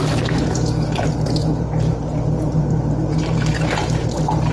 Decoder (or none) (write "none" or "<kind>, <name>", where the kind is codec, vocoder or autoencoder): vocoder, BigVGAN v2